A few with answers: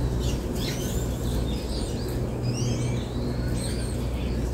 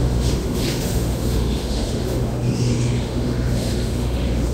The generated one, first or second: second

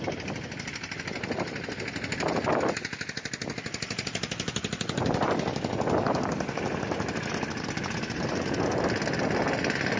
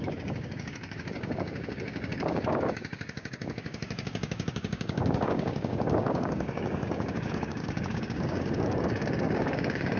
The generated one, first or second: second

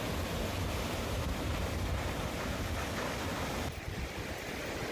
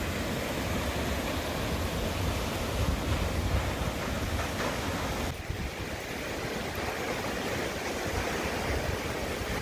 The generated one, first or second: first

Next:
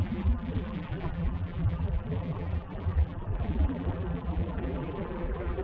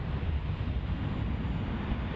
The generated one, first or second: first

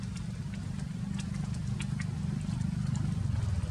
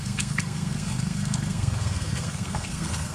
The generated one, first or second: second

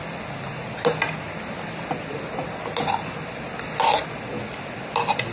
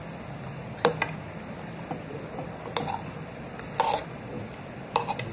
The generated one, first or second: second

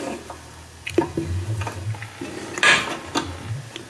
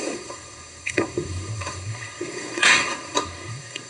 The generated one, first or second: second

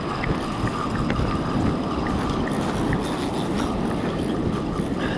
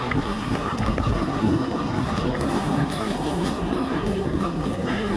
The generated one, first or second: second